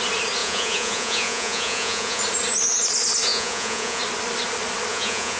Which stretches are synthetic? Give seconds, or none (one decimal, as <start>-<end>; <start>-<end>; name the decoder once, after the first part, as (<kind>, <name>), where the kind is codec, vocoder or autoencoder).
0.4-2.2 (vocoder, Vocos); 3.3-4.0; 4.9-5.4